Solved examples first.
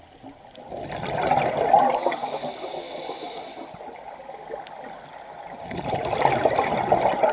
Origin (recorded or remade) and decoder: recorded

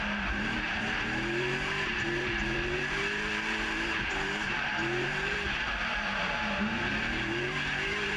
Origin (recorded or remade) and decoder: remade, vocoder, BigVGAN v2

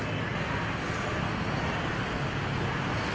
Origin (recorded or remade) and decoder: recorded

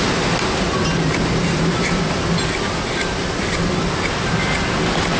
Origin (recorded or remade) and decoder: recorded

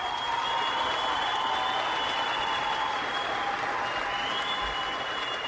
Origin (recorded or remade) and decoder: recorded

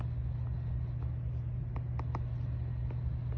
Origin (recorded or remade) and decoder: recorded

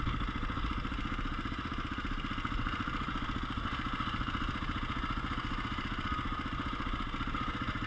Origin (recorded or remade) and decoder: recorded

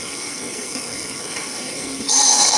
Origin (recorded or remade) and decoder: remade, codec, SNAC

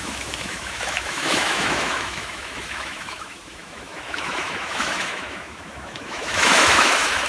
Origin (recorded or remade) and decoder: remade, autoencoder, DAC-VAE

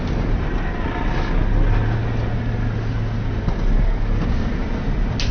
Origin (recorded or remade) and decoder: recorded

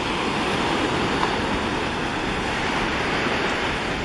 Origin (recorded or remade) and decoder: recorded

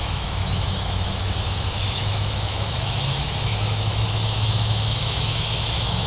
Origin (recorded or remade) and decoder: remade, autoencoder, DAC-VAE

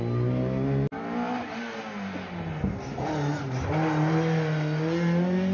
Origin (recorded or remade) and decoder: recorded